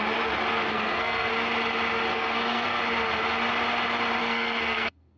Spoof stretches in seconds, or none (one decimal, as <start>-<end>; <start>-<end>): 0.7-1.3; 2.1-2.8; 4.2-5.2